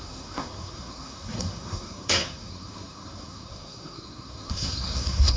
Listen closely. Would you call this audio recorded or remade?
remade